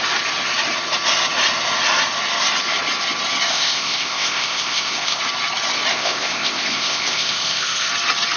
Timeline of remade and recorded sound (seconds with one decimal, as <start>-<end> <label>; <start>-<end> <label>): 0.0-3.5 recorded; 3.5-5.2 remade; 5.2-5.9 recorded; 5.9-7.9 remade; 7.9-8.4 recorded